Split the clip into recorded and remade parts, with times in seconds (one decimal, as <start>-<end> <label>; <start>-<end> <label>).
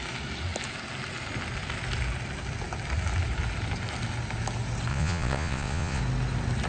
0.0-4.9 recorded; 4.9-6.0 remade; 6.0-6.7 recorded